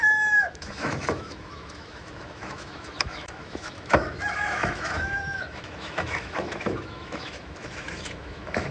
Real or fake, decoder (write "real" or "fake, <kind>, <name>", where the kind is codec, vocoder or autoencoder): fake, autoencoder, DAC-VAE